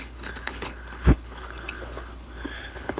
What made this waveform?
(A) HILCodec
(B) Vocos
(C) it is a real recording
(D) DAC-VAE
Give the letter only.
A